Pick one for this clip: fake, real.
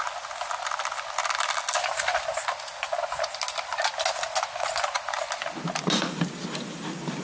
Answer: real